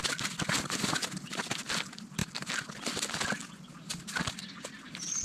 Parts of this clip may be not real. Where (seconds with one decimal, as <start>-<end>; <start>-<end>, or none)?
none